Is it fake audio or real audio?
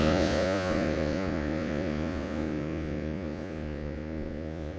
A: fake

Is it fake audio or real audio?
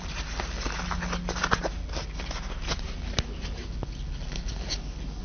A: real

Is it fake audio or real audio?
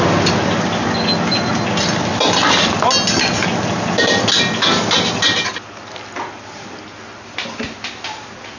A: real